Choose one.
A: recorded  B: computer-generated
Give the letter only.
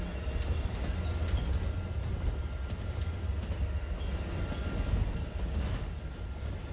A